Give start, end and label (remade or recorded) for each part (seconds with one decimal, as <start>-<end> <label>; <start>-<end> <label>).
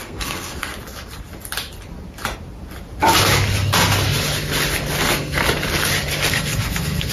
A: 0.0-0.7 remade; 0.7-5.0 recorded; 5.0-5.4 remade; 5.4-6.3 recorded; 6.3-7.1 remade